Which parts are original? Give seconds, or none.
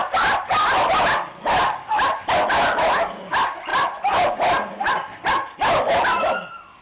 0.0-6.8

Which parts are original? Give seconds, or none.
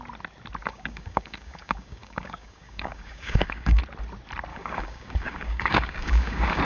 0.0-0.6; 3.8-4.5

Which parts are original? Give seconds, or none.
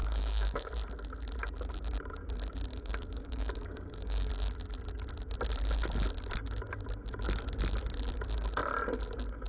0.7-2.7; 4.3-9.5